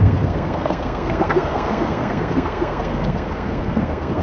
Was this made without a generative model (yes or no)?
no